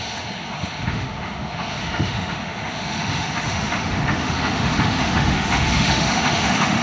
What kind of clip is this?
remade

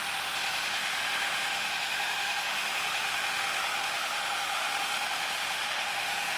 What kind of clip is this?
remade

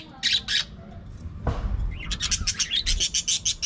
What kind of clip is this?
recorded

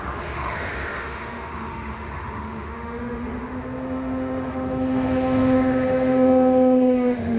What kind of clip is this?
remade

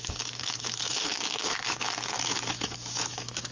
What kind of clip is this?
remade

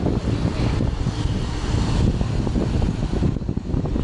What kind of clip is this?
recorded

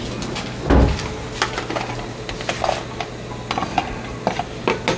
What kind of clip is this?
recorded